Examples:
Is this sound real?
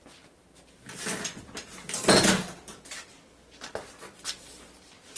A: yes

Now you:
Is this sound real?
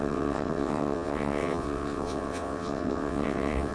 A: no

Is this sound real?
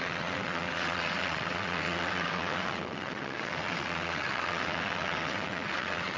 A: no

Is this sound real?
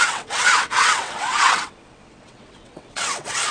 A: no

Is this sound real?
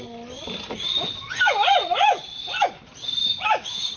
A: yes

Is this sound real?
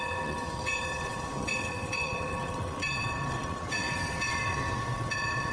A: no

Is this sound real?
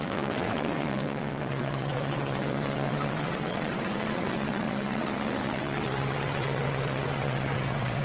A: no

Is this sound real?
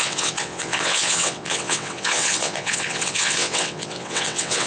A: no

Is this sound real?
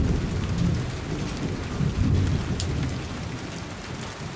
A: yes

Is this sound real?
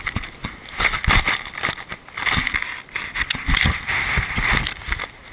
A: yes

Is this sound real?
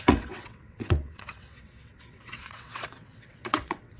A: no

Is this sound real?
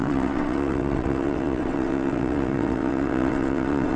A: no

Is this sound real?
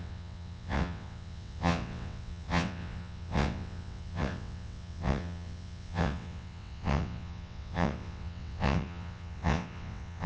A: no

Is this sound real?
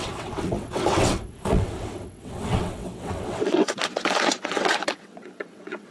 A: no